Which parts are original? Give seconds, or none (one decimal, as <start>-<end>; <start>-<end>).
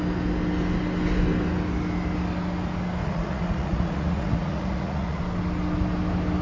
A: 0.0-3.0; 5.2-6.4